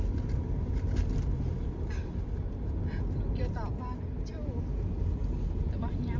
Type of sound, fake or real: real